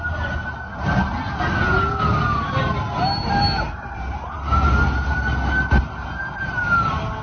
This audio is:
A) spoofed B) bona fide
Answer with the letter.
B